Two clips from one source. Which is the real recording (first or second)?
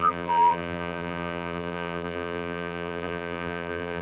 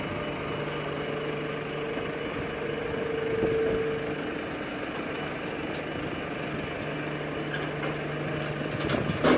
second